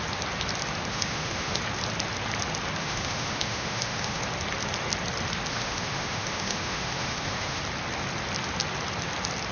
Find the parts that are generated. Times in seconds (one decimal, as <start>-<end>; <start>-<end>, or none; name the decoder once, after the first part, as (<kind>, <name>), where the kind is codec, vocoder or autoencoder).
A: 0.9-1.6 (autoencoder, DAC-VAE); 2.8-4.2; 5.5-7.6